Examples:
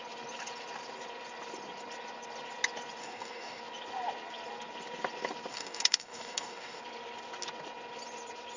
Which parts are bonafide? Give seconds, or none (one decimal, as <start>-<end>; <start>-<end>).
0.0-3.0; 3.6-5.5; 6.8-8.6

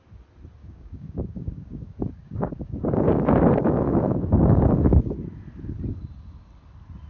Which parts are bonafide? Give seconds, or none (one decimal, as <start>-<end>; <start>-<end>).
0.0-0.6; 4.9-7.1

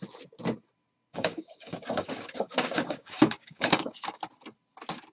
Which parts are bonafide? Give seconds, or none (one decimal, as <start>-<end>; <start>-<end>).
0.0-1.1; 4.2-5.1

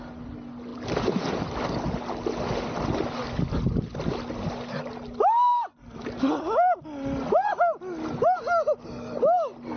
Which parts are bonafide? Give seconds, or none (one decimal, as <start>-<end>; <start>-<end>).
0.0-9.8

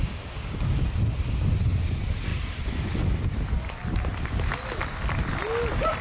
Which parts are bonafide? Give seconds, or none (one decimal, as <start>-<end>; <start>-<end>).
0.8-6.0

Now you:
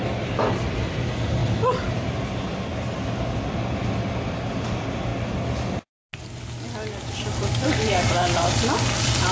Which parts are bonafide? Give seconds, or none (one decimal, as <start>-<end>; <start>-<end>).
0.0-9.3

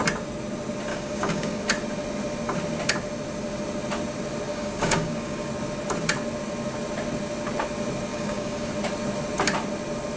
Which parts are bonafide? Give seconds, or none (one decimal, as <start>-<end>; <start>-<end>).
0.0-0.9; 1.6-4.5; 5.5-8.1; 8.7-10.2

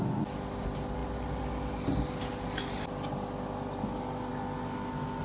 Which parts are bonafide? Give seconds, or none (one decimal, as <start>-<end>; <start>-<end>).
0.0-5.2